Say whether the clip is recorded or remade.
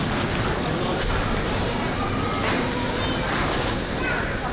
recorded